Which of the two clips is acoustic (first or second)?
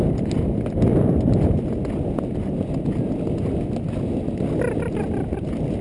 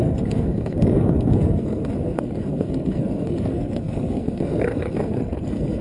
first